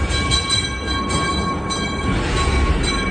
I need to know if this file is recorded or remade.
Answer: recorded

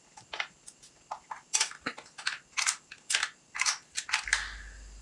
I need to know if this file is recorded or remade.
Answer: recorded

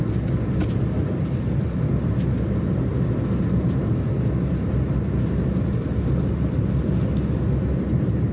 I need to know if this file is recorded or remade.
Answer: recorded